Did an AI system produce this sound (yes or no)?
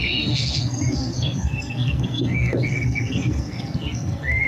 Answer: yes